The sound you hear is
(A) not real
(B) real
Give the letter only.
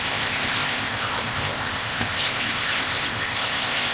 A